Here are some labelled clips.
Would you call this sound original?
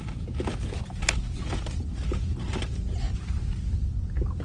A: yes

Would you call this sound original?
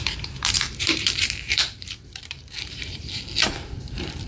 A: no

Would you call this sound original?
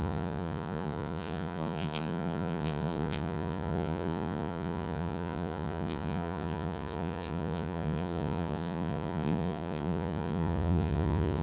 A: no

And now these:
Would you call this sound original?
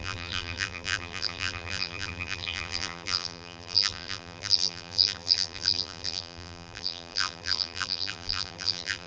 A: no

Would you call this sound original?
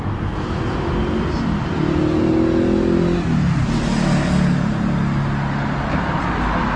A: yes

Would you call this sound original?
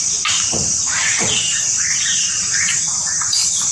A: no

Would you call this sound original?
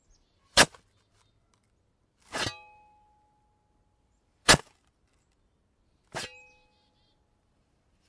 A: yes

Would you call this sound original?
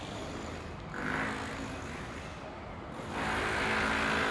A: yes